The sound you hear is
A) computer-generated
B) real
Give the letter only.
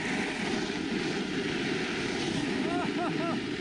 B